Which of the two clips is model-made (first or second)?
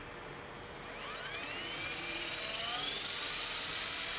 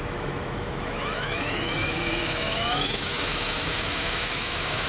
second